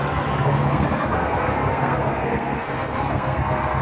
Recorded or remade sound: remade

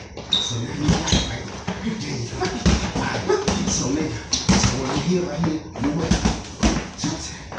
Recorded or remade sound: recorded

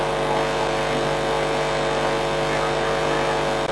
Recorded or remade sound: recorded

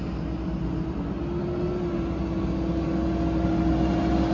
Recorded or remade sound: recorded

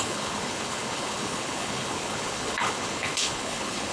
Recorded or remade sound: remade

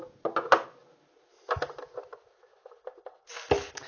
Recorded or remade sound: recorded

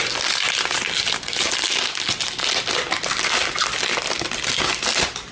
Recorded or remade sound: recorded